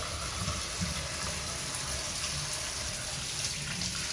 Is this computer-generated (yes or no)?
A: no